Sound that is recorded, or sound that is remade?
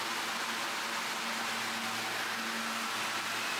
recorded